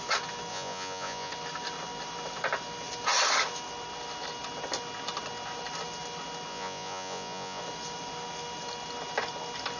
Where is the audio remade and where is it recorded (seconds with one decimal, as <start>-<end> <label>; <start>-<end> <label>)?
0.0-0.5 recorded; 0.5-1.3 remade; 1.3-6.5 recorded; 6.5-7.6 remade; 7.6-9.8 recorded